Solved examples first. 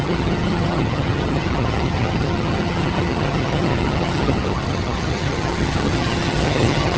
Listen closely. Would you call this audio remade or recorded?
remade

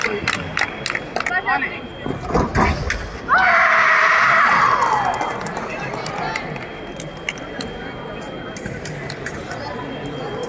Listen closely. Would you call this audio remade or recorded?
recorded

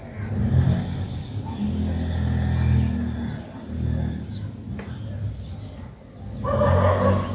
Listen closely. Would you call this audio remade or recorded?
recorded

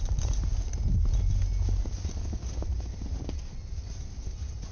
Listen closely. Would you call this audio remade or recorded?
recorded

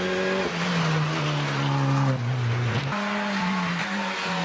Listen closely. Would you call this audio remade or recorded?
recorded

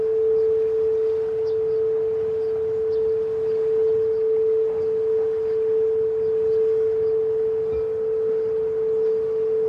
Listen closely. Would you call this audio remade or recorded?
recorded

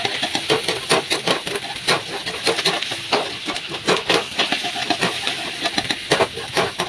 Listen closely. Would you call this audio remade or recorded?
recorded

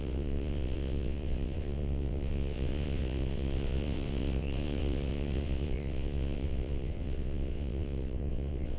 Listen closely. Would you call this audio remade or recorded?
remade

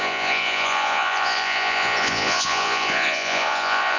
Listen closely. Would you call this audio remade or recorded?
remade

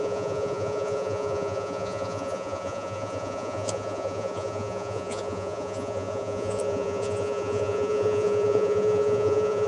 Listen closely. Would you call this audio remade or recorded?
remade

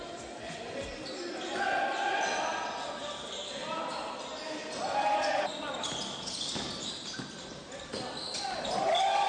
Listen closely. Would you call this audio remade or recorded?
recorded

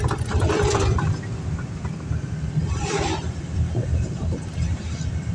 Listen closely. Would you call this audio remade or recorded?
remade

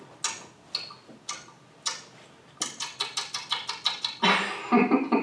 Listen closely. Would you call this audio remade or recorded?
recorded